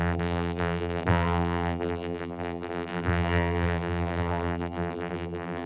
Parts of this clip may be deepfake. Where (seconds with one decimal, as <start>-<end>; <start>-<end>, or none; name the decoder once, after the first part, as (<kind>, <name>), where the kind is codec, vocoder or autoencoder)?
0.0-5.7 (vocoder, BigVGAN v2)